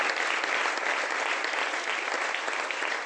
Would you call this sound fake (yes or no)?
no